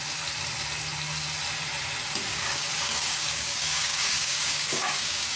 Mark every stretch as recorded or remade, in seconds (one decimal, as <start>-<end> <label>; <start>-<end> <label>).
0.0-2.3 recorded; 2.3-5.4 remade

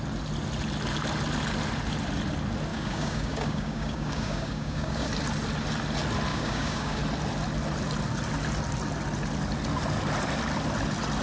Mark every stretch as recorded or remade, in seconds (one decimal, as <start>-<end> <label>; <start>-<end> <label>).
0.0-2.7 recorded; 2.7-5.1 remade; 5.1-6.3 recorded; 6.3-7.0 remade; 7.0-11.2 recorded

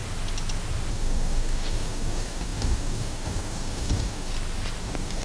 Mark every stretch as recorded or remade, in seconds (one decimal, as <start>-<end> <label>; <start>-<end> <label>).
0.0-0.9 recorded; 0.9-4.3 remade; 4.3-4.8 recorded; 4.8-5.2 remade